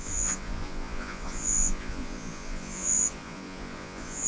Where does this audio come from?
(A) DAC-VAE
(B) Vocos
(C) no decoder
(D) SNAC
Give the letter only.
B